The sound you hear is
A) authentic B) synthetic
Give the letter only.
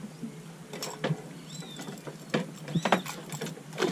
A